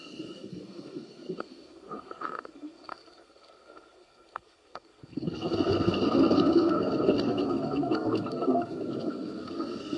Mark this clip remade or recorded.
remade